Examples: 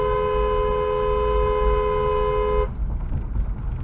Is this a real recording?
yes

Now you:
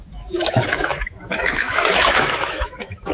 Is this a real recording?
no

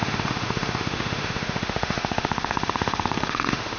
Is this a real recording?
no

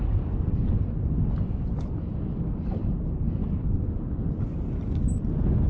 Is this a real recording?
yes